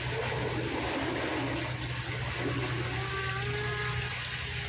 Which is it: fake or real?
real